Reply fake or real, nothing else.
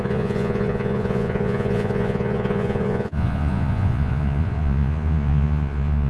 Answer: fake